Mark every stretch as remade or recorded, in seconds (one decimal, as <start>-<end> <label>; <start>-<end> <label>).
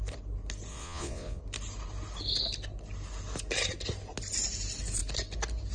0.0-0.7 recorded; 0.7-1.4 remade; 1.4-5.7 recorded